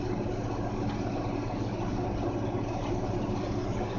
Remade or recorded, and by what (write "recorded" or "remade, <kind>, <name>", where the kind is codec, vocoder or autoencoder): recorded